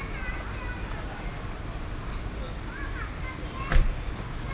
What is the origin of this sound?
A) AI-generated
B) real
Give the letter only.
B